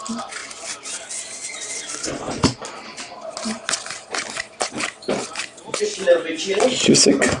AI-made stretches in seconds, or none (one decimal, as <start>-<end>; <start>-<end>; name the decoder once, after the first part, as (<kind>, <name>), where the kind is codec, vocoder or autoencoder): none